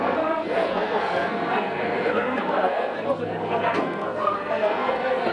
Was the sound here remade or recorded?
remade